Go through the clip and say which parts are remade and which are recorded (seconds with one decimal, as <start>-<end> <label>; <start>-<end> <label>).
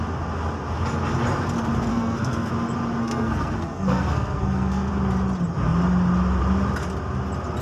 0.0-1.9 recorded; 1.9-2.5 remade; 2.5-3.0 recorded; 3.0-4.9 remade; 4.9-7.6 recorded